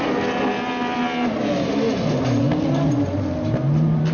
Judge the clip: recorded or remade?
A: recorded